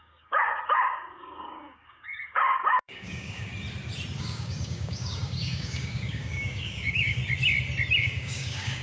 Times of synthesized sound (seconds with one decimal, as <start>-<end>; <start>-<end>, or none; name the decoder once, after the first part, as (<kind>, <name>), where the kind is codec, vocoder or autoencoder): 0.0-3.5 (codec, DAC); 4.2-7.2; 8.0-8.8